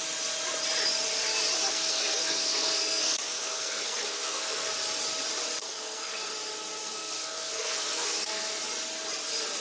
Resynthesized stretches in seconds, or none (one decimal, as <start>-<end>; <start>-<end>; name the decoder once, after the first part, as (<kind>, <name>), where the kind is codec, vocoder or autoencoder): 1.7-4.7 (codec, SNAC); 5.6-6.3; 6.8-8.6